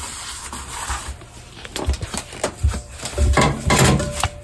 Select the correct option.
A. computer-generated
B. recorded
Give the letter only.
B